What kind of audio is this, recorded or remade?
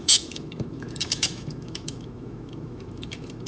remade